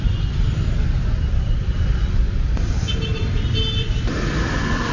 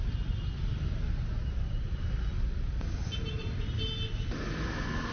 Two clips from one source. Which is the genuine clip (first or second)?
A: second